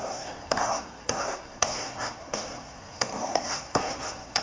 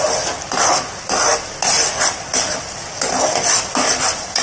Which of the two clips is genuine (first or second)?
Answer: second